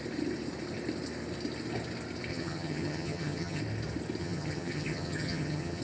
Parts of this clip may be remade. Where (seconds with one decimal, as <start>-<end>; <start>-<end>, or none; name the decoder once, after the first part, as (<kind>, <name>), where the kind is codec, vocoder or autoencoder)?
2.3-3.6 (vocoder, HiFi-GAN); 4.2-5.8